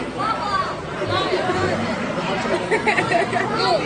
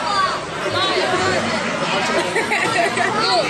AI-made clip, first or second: first